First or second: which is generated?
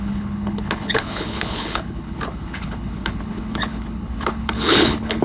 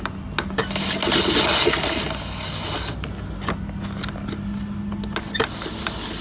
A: first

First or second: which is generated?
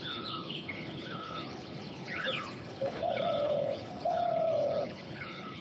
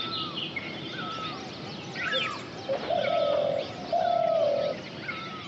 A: first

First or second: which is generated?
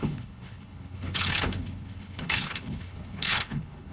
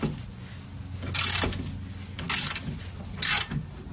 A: first